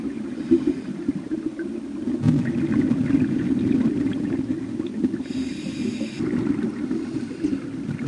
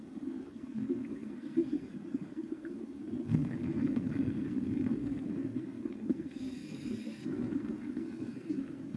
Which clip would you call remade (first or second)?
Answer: second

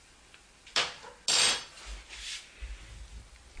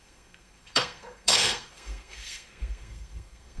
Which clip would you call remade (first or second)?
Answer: second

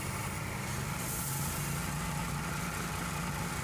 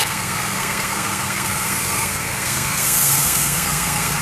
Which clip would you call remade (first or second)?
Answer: second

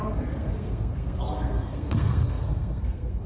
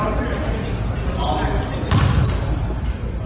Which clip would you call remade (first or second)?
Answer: first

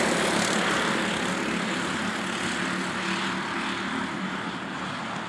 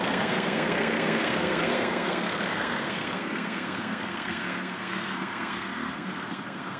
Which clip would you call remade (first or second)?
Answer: second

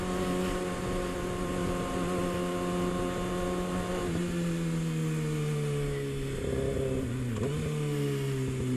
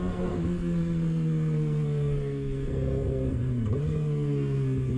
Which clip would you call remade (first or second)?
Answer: second